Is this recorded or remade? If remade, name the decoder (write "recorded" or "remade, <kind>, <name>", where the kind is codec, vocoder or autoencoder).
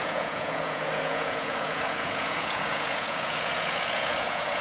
remade, vocoder, Vocos